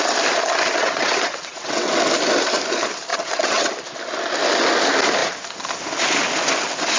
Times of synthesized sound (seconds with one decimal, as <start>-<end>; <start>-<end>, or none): 0.8-1.9; 3.1-3.7